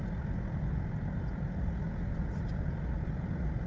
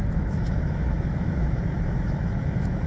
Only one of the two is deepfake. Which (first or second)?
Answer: second